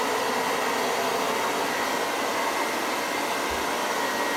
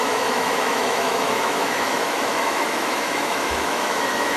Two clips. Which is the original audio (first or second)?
first